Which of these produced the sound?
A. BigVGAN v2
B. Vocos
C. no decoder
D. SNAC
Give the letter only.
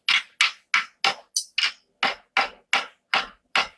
C